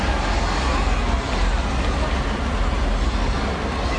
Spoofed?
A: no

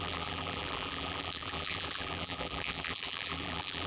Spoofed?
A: yes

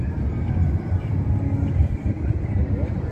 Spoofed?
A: no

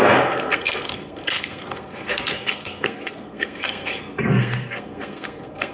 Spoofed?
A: yes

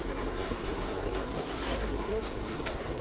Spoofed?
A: yes